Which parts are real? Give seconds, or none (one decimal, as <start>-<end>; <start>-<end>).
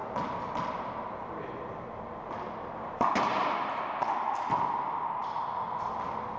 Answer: 3.8-6.4